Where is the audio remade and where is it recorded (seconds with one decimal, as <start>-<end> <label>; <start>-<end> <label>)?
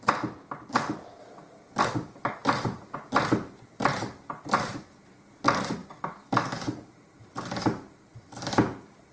0.0-9.1 recorded